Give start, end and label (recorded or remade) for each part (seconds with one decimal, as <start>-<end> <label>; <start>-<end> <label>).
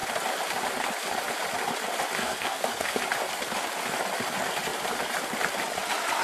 0.0-2.2 recorded; 2.2-3.0 remade; 3.0-6.2 recorded